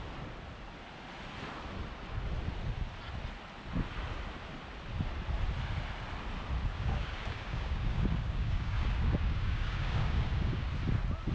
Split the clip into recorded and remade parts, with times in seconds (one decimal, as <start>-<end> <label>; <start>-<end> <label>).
0.0-6.7 recorded; 6.7-10.7 remade; 10.7-11.3 recorded